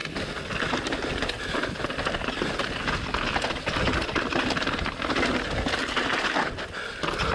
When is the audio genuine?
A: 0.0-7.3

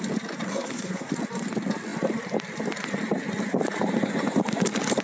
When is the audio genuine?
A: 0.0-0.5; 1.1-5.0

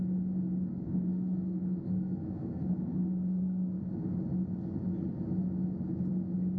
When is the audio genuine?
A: 0.0-0.7; 3.9-6.6